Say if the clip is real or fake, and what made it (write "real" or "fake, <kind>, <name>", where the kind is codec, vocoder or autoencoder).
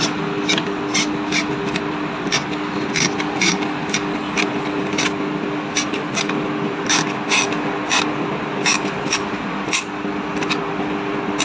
real